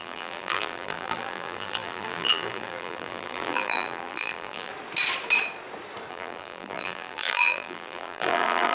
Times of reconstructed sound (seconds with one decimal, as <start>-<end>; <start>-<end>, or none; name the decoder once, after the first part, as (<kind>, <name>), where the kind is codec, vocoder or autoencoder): 0.0-4.7 (vocoder, BigVGAN v2); 6.1-8.7